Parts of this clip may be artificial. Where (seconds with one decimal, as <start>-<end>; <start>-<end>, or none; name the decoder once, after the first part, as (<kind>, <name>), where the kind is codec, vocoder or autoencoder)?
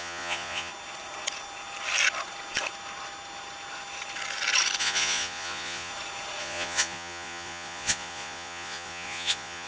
0.0-0.7 (vocoder, Vocos); 4.8-5.9; 6.4-9.7